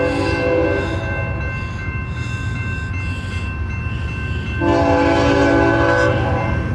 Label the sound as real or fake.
real